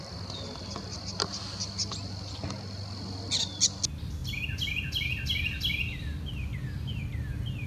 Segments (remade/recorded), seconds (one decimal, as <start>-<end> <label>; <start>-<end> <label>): 0.0-7.7 recorded